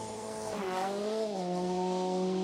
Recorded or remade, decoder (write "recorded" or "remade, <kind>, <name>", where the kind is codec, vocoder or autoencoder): remade, codec, SNAC